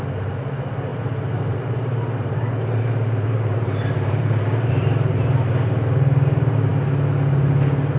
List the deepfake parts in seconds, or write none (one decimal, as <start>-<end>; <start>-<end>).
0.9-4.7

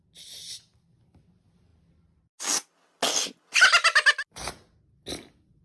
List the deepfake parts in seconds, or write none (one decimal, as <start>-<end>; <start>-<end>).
none

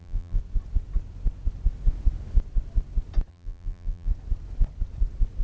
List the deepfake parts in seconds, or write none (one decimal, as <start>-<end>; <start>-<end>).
0.0-0.4; 3.3-4.1

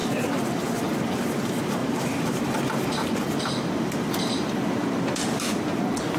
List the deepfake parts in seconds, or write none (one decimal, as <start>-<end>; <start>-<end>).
0.0-0.8; 1.8-2.6; 4.8-5.3

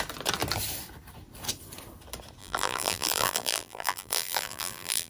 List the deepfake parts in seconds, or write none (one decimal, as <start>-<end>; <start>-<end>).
2.4-5.1

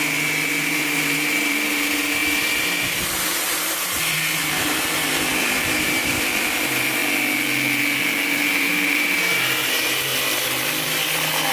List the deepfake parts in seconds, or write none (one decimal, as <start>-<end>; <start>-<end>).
0.0-7.0; 8.5-10.1

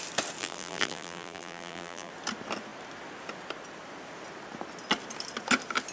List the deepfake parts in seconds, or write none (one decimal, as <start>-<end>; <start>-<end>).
0.4-2.1